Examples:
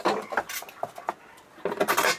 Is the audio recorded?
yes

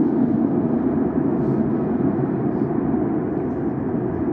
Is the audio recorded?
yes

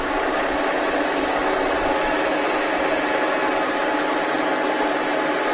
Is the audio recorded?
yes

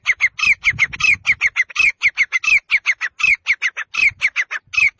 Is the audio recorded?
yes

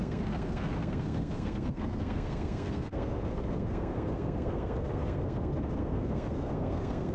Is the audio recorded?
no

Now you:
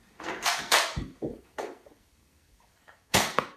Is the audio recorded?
no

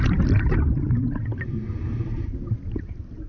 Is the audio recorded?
yes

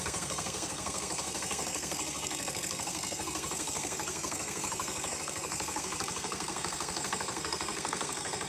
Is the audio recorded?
no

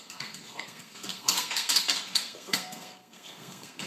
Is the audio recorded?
no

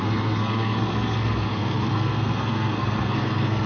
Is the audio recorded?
no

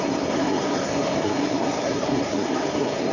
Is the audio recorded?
no